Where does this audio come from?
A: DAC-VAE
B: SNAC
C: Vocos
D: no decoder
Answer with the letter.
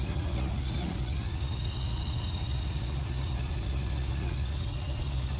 C